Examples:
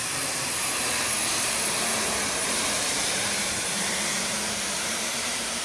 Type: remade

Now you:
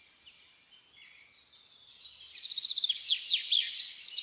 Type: recorded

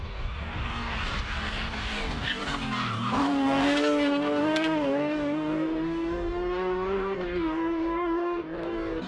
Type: remade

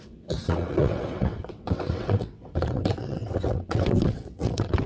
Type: remade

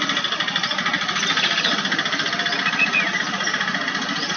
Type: recorded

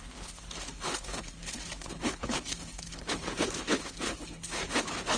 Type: remade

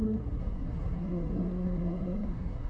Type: remade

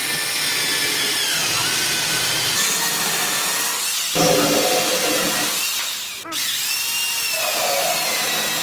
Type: recorded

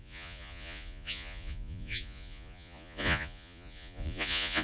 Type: remade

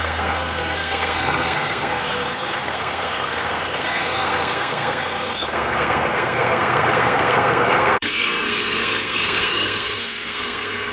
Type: remade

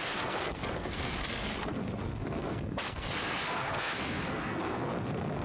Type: remade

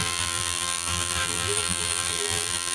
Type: remade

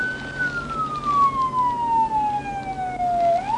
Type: recorded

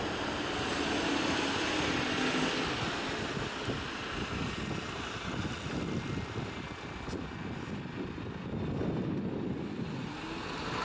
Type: recorded